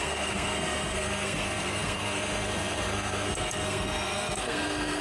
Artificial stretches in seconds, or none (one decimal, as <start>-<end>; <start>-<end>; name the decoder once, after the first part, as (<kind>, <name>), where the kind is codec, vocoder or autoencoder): 0.0-5.0 (codec, SNAC)